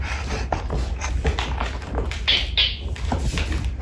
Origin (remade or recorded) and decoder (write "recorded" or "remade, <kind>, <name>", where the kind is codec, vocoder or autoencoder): recorded